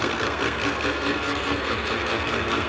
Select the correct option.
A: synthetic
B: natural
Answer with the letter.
A